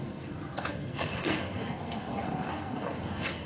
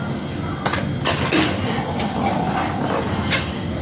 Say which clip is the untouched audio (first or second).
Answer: second